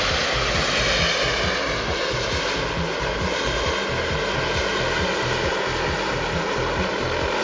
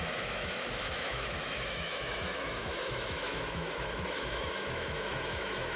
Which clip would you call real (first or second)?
first